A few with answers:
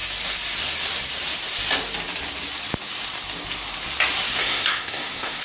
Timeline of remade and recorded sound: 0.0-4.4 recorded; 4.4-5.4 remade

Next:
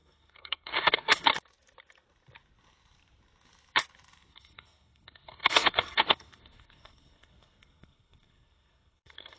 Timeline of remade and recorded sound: 0.0-1.3 remade; 1.3-4.3 recorded; 4.3-9.4 remade